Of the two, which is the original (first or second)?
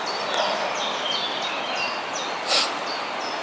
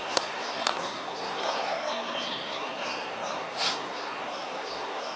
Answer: first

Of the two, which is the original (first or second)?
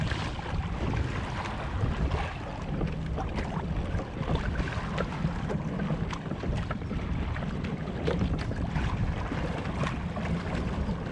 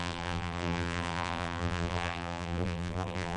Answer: first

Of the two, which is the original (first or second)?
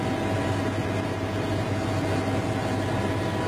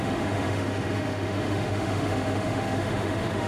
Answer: first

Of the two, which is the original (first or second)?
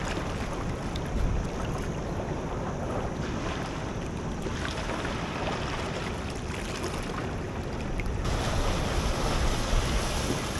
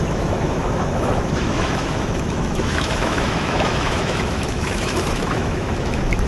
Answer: first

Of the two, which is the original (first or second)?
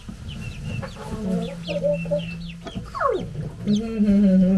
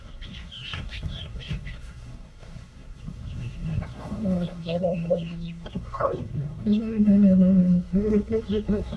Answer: first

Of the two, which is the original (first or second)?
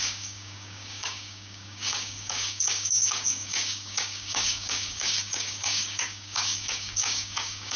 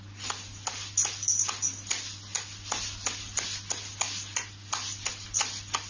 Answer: second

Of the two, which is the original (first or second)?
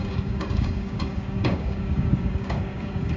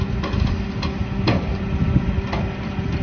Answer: second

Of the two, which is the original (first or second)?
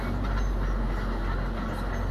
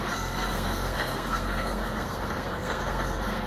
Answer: first